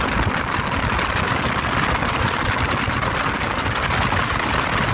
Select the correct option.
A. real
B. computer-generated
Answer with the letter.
A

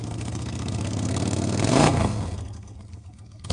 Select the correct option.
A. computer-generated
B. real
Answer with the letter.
A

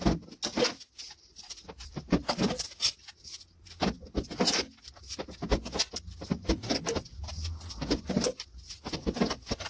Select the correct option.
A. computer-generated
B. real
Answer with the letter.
B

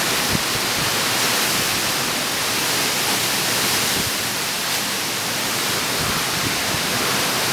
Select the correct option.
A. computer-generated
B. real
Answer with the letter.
B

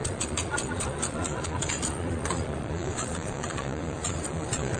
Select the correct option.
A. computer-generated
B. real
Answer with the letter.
A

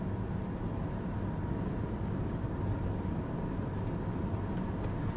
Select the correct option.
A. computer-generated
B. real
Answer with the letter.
B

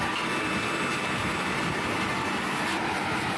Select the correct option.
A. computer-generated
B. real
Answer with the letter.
B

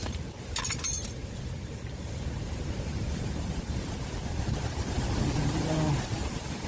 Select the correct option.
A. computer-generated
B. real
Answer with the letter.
A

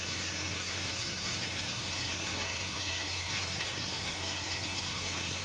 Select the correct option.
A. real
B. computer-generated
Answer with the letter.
B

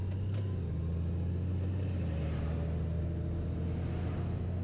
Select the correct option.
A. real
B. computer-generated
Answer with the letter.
A